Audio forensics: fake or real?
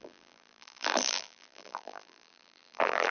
fake